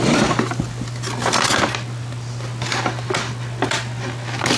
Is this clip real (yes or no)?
yes